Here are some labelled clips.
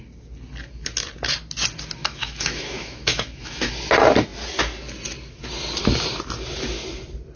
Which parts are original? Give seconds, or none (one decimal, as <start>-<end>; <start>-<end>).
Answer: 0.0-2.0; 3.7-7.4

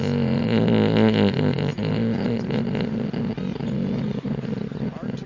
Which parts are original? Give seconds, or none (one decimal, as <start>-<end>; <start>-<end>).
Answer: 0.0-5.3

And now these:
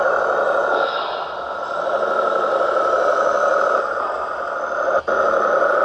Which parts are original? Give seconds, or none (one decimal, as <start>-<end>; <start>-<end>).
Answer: 0.0-5.8

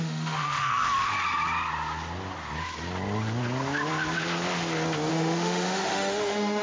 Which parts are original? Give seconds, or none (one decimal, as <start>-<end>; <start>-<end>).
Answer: 1.1-5.1

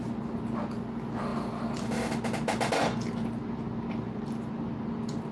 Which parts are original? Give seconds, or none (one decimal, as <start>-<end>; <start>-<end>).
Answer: 0.0-5.3